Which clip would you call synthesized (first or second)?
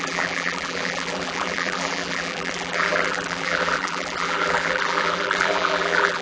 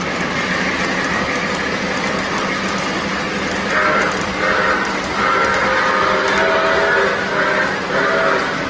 first